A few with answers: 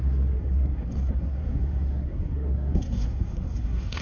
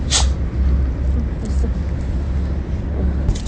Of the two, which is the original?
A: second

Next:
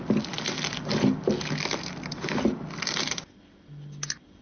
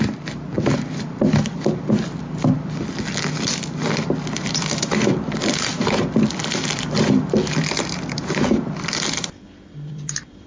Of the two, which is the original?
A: first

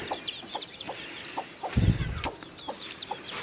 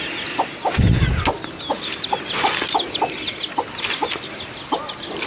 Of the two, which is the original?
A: second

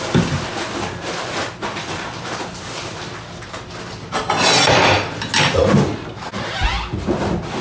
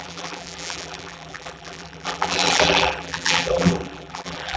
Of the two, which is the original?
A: first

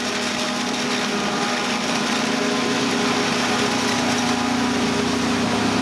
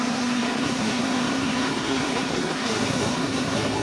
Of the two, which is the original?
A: first